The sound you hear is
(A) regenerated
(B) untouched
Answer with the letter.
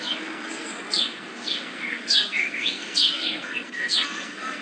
A